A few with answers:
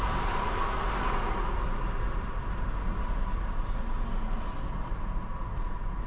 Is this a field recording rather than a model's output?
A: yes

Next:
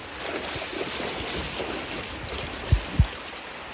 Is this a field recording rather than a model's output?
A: yes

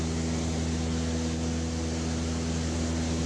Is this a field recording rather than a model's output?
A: yes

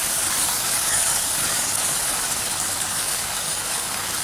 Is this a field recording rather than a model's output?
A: no